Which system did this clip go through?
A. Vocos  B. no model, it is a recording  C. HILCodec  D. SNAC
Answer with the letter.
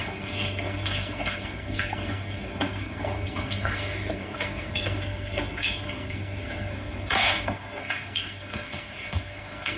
D